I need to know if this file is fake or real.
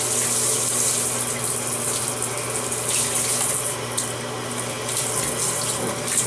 real